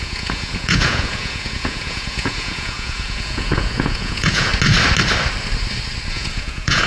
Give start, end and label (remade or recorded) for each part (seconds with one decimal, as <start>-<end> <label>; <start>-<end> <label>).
0.0-4.5 remade; 4.5-6.1 recorded; 6.1-6.9 remade